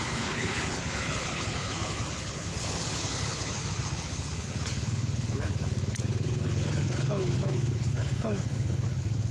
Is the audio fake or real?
fake